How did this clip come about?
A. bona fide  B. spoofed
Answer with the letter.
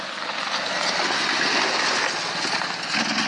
A